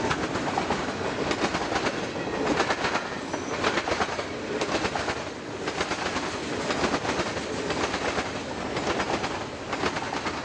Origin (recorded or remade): recorded